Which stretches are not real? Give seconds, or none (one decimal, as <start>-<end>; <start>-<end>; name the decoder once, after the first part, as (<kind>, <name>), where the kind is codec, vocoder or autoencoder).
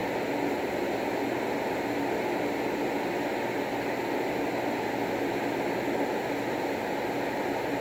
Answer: none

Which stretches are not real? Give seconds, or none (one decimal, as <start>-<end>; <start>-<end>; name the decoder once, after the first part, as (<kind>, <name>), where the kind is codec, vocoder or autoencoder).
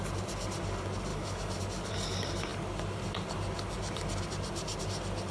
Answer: 1.1-1.6 (autoencoder, DAC-VAE)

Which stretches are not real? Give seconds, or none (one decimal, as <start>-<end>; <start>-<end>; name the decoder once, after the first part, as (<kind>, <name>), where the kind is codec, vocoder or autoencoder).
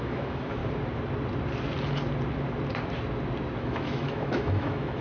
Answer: 0.0-0.6 (autoencoder, DAC-VAE); 3.6-5.0